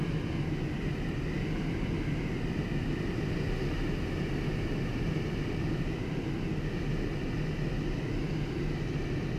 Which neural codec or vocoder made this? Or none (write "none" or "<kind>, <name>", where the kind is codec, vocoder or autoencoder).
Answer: none